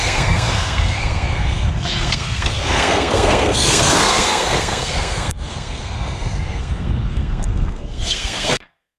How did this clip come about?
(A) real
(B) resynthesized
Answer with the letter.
B